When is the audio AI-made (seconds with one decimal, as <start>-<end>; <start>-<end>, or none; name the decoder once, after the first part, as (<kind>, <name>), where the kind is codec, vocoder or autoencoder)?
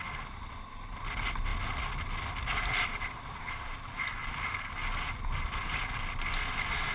none